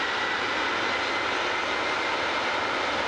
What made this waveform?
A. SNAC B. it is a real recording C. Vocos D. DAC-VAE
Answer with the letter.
B